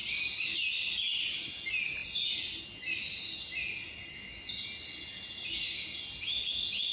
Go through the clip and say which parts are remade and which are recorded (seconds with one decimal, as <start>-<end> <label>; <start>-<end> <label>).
0.0-6.9 recorded